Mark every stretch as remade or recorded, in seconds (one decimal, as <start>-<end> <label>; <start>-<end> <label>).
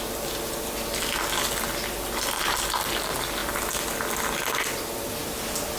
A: 0.0-5.8 recorded